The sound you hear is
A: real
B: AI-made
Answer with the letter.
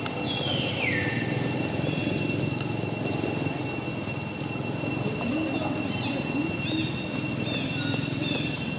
A